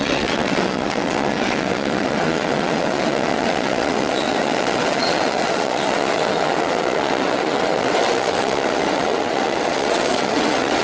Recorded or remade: remade